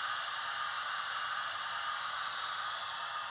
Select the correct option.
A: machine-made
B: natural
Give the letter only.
B